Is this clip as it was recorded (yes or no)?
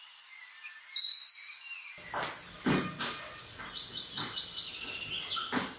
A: yes